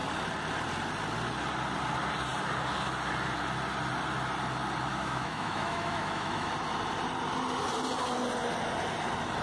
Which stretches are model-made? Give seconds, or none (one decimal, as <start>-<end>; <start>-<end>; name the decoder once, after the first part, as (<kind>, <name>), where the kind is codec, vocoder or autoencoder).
4.9-6.5 (autoencoder, DAC-VAE)